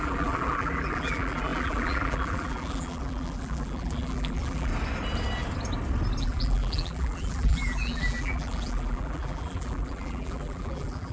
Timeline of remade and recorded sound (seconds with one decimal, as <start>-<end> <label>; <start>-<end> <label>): 0.0-4.7 remade; 4.7-6.2 recorded; 6.2-11.1 remade